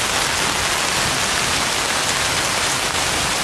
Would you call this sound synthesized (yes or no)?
no